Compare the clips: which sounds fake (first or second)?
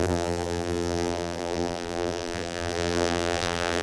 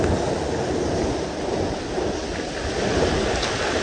first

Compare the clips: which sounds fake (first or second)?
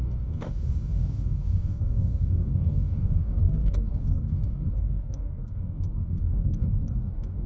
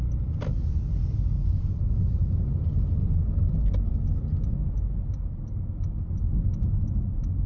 first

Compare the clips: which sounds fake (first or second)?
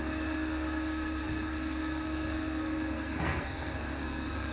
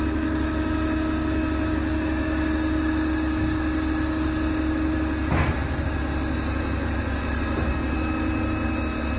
first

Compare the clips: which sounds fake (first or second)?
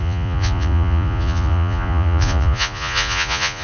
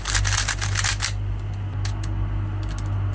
first